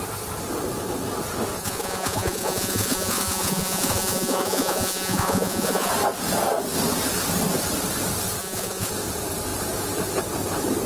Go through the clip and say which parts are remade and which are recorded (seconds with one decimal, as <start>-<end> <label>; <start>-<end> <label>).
0.0-1.6 recorded; 1.6-5.9 remade; 5.9-8.4 recorded; 8.4-8.9 remade; 8.9-10.9 recorded